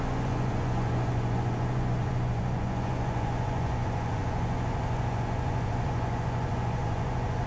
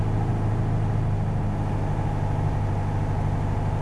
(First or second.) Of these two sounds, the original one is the second